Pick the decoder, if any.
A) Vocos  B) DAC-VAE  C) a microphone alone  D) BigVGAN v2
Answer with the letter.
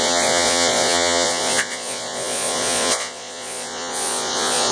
A